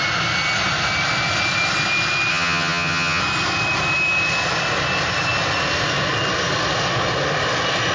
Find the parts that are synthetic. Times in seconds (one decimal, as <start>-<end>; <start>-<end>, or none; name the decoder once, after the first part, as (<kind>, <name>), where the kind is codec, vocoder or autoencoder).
2.3-3.2 (vocoder, HiFi-GAN)